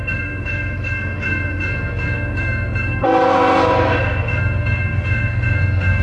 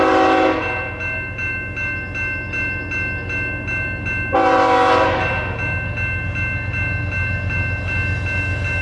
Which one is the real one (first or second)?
second